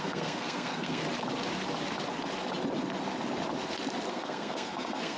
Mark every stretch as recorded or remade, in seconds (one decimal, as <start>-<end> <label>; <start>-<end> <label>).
0.0-1.0 remade; 1.0-4.1 recorded; 4.1-5.2 remade

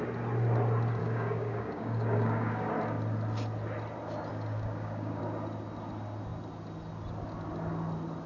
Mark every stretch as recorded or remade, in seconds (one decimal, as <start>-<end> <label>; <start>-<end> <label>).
0.0-1.0 recorded; 1.0-2.7 remade; 2.7-4.3 recorded; 4.3-5.2 remade; 5.2-8.3 recorded

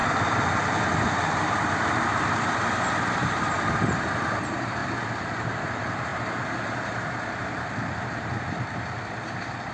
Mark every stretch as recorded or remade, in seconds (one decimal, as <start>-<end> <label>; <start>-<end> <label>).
0.0-9.7 remade

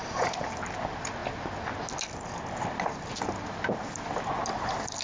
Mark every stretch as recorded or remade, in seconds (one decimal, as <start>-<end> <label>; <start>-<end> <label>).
0.0-5.0 recorded

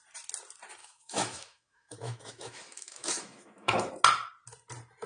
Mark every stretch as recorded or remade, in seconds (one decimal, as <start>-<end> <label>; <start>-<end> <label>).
0.0-0.8 recorded; 0.8-3.9 remade; 3.9-5.1 recorded